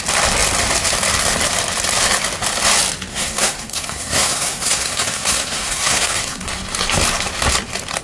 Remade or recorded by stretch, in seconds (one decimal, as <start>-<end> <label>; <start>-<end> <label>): 0.0-3.1 recorded; 3.1-6.5 remade; 6.5-8.0 recorded